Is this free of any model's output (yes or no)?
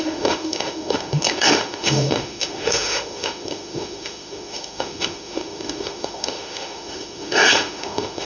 no